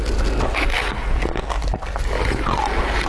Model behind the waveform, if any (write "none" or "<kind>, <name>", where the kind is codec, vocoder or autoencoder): none